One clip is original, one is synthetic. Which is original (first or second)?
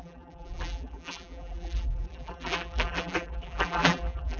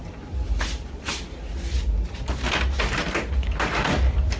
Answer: second